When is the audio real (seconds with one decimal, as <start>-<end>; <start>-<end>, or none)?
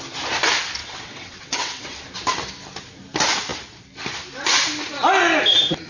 0.0-0.8; 2.0-5.9